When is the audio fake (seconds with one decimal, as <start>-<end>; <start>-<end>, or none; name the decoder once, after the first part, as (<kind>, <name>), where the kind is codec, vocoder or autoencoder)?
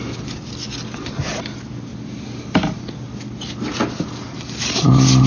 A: none